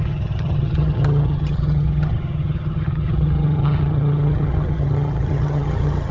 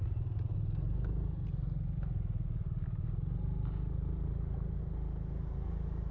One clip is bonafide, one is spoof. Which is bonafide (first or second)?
second